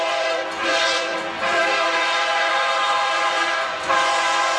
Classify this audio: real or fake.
fake